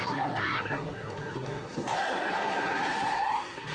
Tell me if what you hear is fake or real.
fake